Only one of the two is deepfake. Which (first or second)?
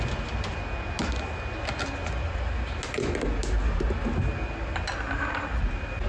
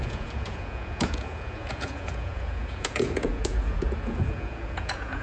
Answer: second